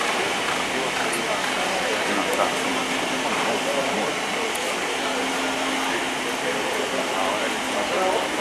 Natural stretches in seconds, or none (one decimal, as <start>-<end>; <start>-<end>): 0.0-8.4